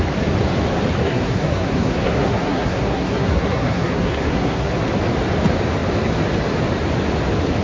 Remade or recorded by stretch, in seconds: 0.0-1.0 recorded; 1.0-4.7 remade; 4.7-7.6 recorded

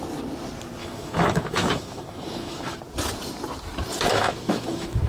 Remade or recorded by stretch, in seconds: 0.0-0.8 recorded; 0.8-2.8 remade; 2.8-4.1 recorded; 4.1-5.1 remade

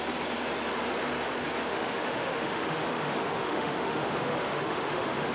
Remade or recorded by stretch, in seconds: 0.0-1.7 recorded; 1.7-5.3 remade

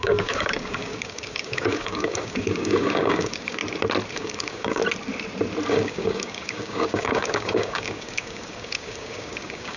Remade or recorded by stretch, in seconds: 0.0-3.6 remade; 3.6-4.1 recorded; 4.1-4.8 remade; 4.8-5.7 recorded; 5.7-9.8 remade